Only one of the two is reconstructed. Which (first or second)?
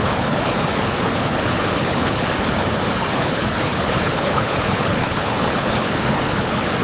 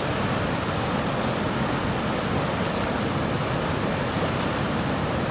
first